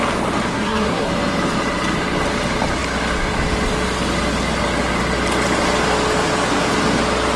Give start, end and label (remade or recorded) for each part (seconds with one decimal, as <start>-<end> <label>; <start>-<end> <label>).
0.0-0.5 recorded; 0.5-1.1 remade; 1.1-7.4 recorded